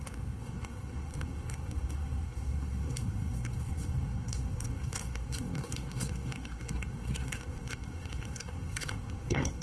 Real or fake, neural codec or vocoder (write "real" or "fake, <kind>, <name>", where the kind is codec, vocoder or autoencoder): fake, codec, SNAC